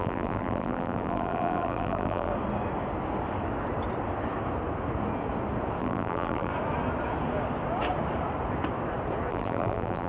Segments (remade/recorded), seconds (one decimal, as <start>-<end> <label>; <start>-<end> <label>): 0.0-2.3 remade; 2.3-5.8 recorded; 5.8-6.5 remade; 6.5-9.3 recorded; 9.3-10.1 remade